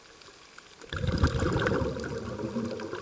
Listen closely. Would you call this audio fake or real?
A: real